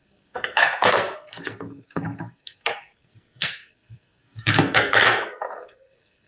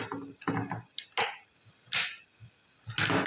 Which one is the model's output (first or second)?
first